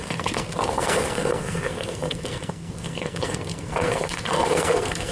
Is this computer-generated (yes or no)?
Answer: yes